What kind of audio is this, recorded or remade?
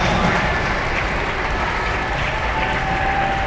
recorded